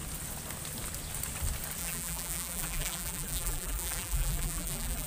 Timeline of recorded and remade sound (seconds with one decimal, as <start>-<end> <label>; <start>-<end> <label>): 0.0-1.8 recorded; 1.8-5.1 remade